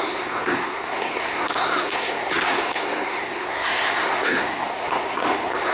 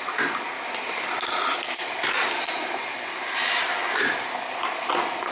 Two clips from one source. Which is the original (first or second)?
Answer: second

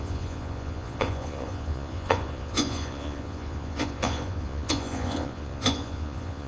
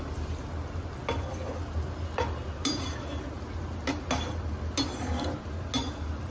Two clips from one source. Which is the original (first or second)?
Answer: second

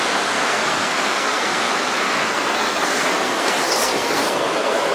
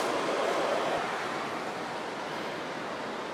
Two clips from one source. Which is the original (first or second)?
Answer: second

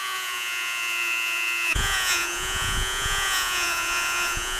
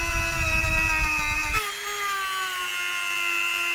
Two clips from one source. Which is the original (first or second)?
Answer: second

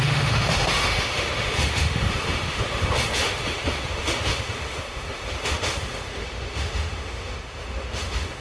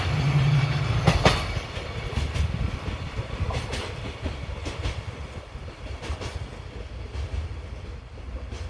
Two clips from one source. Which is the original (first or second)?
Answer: second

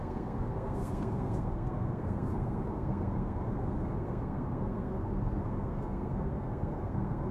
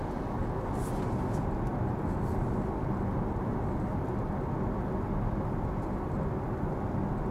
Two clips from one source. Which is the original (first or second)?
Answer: second